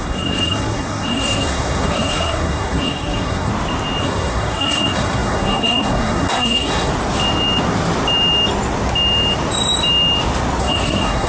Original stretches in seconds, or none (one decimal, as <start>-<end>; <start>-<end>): 3.5-4.0; 6.9-10.6